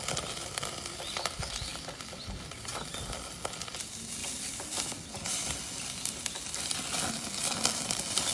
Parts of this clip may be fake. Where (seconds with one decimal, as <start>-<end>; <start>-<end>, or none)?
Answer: none

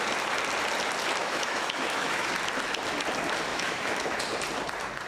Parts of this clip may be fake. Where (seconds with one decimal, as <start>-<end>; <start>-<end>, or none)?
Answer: 1.2-2.3; 3.5-4.2

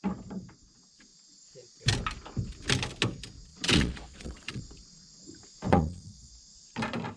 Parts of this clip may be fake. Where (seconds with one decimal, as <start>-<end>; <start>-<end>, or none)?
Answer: 3.5-4.6; 5.7-6.3